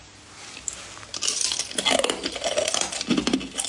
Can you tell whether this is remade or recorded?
recorded